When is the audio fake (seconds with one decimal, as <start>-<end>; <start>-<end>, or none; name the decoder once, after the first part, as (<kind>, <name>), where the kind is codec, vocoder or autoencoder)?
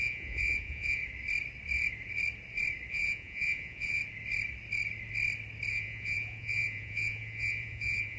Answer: 0.0-1.0 (vocoder, Vocos); 2.9-4.0; 5.7-8.2